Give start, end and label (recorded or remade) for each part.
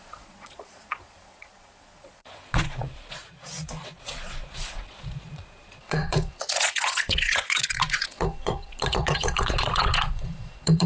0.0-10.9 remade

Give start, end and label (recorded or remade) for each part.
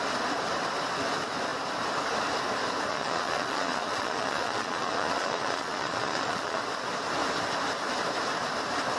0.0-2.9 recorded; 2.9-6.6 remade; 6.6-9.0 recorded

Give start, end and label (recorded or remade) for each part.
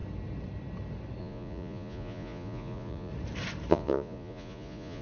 0.0-1.2 recorded; 1.2-3.1 remade; 3.1-3.7 recorded; 3.7-5.0 remade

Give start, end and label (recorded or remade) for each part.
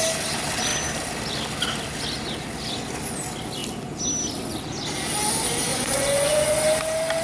0.0-5.7 recorded; 5.7-6.6 remade; 6.6-7.2 recorded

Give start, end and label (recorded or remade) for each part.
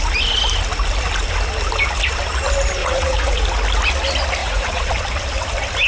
0.0-2.8 recorded; 2.8-3.4 remade; 3.4-4.4 recorded; 4.4-4.9 remade; 4.9-5.9 recorded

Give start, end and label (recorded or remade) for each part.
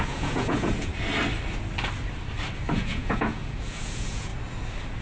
0.0-0.9 remade; 0.9-2.7 recorded; 2.7-4.3 remade; 4.3-5.0 recorded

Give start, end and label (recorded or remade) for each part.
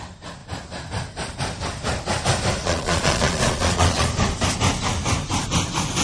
0.0-2.6 recorded; 2.6-4.1 remade; 4.1-6.0 recorded